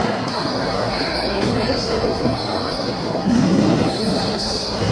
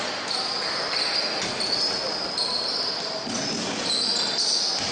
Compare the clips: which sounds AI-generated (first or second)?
first